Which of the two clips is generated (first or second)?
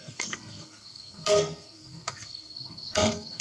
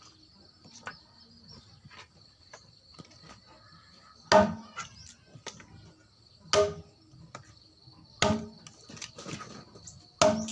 first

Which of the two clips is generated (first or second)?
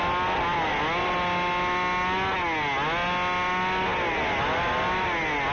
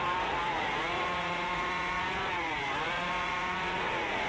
second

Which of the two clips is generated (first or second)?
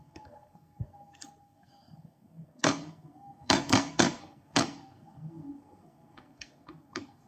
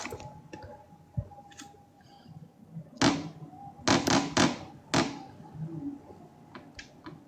first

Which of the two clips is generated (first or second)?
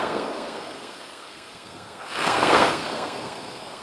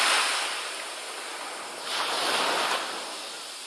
first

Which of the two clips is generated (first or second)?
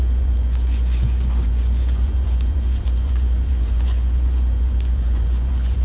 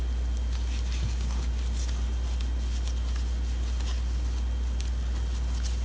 first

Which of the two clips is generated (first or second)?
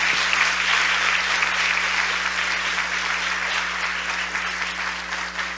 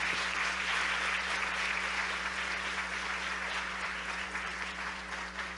second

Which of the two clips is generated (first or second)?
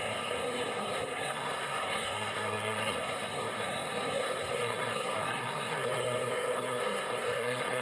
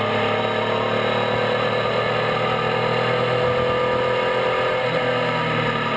first